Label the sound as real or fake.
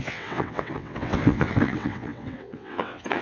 fake